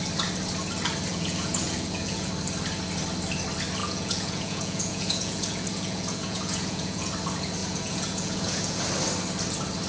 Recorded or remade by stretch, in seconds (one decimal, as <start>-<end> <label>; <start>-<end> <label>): 0.0-1.1 recorded; 1.1-2.3 remade; 2.3-3.8 recorded; 3.8-7.1 remade; 7.1-7.6 recorded; 7.6-8.8 remade; 8.8-9.9 recorded